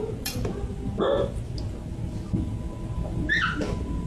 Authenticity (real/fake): fake